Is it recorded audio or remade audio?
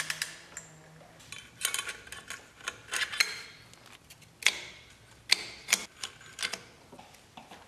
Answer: recorded